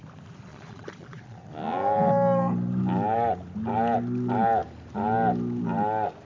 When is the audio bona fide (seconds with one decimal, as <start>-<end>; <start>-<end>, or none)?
0.0-0.5; 1.4-6.2